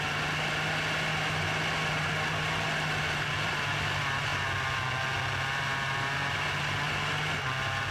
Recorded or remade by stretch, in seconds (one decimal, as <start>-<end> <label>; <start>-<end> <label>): 0.0-7.9 recorded